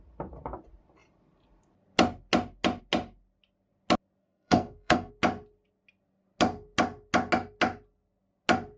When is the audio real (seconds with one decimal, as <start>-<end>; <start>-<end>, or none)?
0.0-4.2; 5.1-8.8

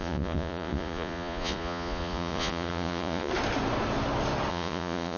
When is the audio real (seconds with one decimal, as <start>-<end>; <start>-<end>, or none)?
3.3-4.5